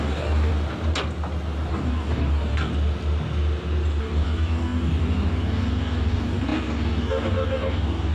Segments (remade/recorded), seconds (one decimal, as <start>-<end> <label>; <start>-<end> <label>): 0.0-0.5 remade; 0.5-1.7 recorded; 1.7-2.7 remade; 2.7-4.0 recorded; 4.0-8.1 remade